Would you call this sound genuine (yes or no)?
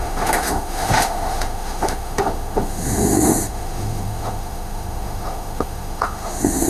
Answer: no